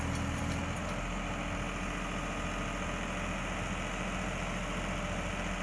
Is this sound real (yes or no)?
yes